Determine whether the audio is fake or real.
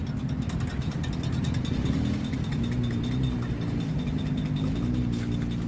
real